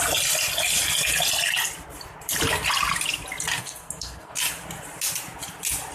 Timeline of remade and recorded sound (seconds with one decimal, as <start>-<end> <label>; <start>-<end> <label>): 0.0-3.6 recorded; 3.6-4.3 remade; 4.3-5.9 recorded